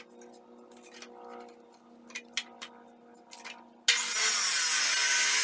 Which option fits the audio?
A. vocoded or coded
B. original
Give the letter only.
B